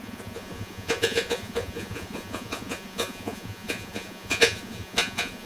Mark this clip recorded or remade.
remade